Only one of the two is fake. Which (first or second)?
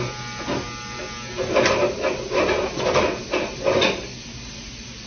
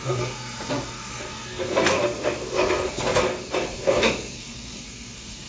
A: second